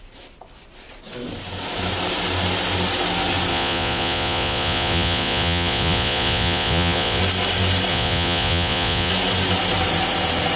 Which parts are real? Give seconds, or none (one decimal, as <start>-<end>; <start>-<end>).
0.0-3.5; 7.2-7.9; 9.1-10.6